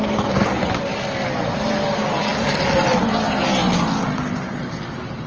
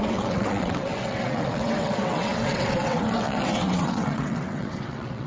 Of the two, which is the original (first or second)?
first